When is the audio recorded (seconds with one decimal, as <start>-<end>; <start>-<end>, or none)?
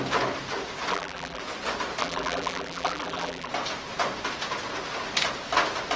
0.0-0.9; 1.4-2.0; 3.5-6.0